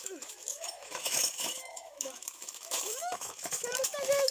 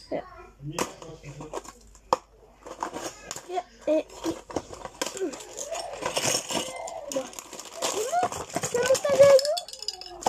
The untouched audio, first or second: second